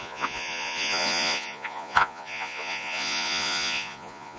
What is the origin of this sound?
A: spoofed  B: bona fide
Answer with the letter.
A